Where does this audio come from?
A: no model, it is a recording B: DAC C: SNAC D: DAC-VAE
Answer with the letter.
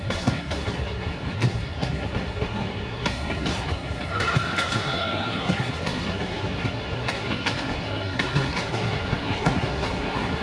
C